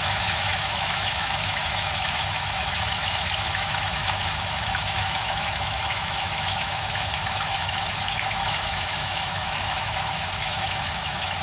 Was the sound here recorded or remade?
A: remade